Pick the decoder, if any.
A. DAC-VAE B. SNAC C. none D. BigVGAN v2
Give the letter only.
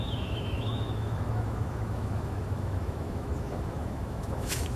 A